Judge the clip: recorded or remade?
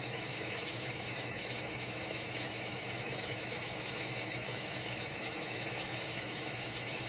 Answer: remade